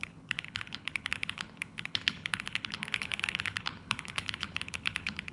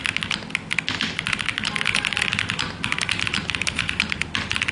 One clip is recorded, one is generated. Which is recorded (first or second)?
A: second